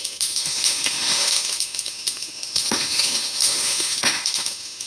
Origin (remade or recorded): remade